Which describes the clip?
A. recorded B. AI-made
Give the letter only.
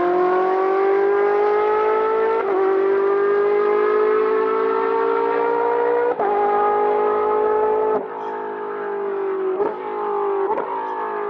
A